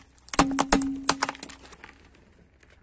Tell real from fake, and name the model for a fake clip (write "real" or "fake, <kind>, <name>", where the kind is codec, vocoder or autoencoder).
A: real